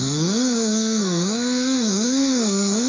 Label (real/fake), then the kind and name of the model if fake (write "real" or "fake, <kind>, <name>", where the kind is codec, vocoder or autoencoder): fake, codec, SNAC